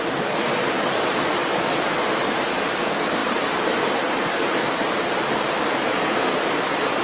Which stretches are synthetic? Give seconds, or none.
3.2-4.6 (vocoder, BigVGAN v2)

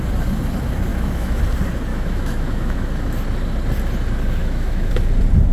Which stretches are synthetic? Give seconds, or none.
0.9-1.4 (autoencoder, DAC-VAE); 1.9-2.9; 4.4-4.9

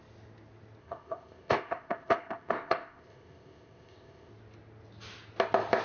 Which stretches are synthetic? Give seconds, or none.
0.8-4.3 (codec, ZipCodec)

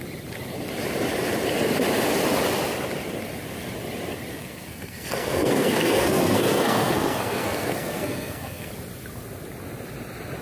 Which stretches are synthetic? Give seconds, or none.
4.3-8.7 (codec, SNAC)

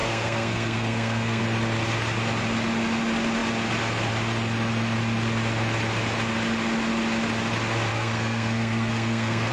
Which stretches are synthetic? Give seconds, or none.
0.0-1.4 (codec, SNAC); 7.9-9.5

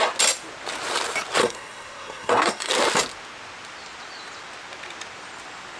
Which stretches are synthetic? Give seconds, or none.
1.4-2.7 (codec, SNAC)

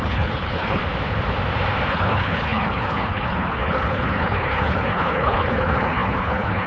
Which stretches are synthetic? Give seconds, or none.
0.0-0.8 (codec, HILCodec); 1.9-6.7

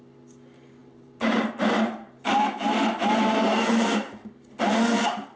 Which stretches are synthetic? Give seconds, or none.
0.8-2.2 (vocoder, BigVGAN v2)